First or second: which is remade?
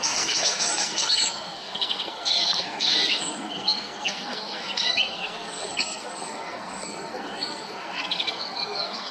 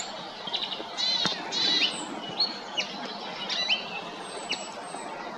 first